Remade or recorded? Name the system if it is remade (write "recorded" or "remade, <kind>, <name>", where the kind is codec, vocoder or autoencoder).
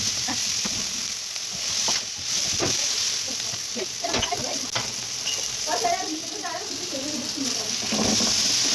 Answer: recorded